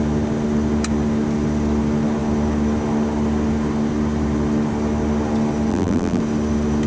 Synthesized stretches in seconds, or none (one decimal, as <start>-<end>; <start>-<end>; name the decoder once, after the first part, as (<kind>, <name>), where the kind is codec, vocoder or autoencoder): 5.7-6.2 (vocoder, BigVGAN v2)